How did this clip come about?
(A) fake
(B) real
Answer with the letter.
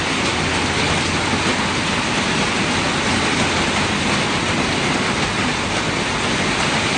B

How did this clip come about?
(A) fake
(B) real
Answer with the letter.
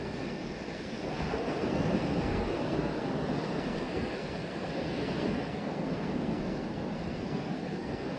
A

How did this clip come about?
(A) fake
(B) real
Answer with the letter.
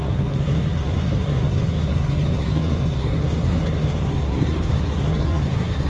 A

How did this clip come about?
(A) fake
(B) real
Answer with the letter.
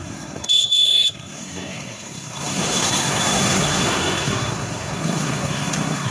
A